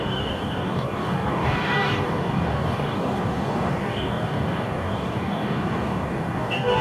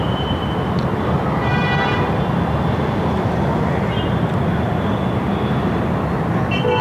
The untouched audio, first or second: second